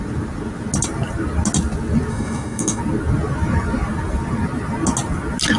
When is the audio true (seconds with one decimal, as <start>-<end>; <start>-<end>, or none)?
0.0-2.1; 2.8-5.6